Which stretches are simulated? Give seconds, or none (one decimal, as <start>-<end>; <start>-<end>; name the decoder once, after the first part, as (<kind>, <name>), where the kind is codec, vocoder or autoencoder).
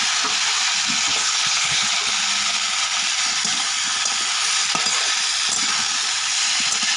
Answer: 1.1-1.9 (codec, HILCodec)